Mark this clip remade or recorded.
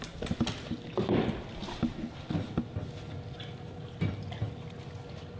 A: recorded